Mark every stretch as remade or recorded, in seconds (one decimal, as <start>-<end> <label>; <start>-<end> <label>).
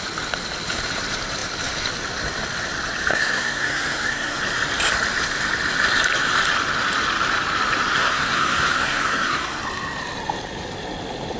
0.0-3.1 recorded; 3.1-4.4 remade; 4.4-8.0 recorded; 8.0-9.6 remade; 9.6-11.4 recorded